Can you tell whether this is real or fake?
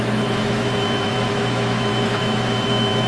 fake